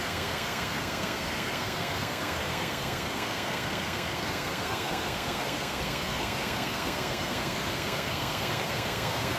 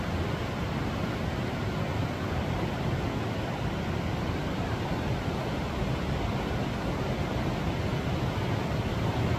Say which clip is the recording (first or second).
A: second